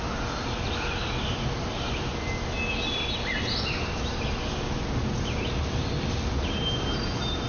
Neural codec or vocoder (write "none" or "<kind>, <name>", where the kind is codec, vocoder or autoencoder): none